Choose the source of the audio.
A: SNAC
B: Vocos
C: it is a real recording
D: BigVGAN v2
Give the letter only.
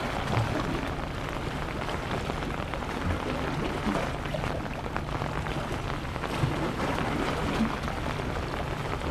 C